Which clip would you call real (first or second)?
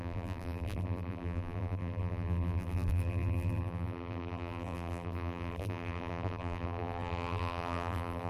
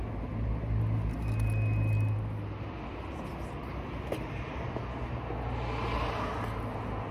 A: second